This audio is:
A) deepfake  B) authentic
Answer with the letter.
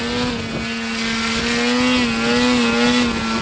B